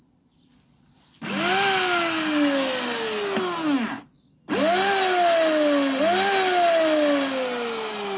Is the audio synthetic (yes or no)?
no